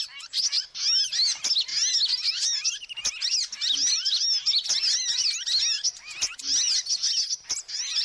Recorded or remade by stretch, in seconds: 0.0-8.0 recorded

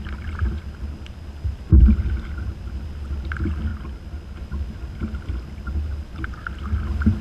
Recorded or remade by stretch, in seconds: 0.0-7.2 recorded

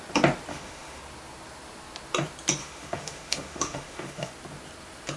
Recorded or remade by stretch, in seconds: 0.0-0.5 recorded; 0.5-1.0 remade; 1.0-2.6 recorded; 2.6-4.3 remade; 4.3-5.2 recorded

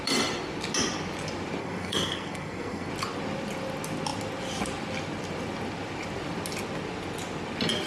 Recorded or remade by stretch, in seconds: 0.0-1.6 recorded; 1.6-2.9 remade; 2.9-7.9 recorded

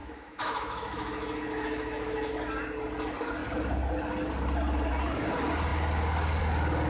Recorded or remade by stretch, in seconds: 0.0-2.3 remade; 2.3-6.9 recorded

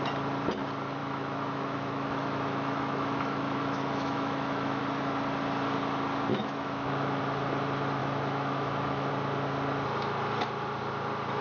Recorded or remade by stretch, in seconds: 0.0-1.0 recorded; 1.0-4.8 remade; 4.8-6.3 recorded; 6.3-7.2 remade; 7.2-8.0 recorded; 8.0-9.1 remade; 9.1-11.4 recorded

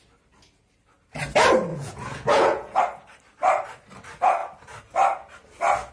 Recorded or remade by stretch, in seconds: 0.0-1.7 recorded; 1.7-2.8 remade; 2.8-5.9 recorded